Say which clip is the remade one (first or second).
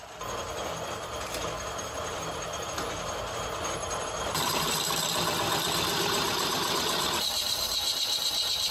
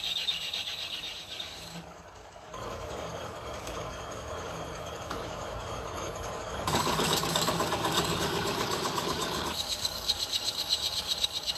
second